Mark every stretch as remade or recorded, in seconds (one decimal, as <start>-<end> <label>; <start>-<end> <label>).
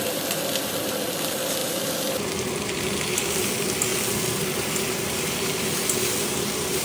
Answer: 0.0-1.6 recorded; 1.6-3.5 remade; 3.5-6.8 recorded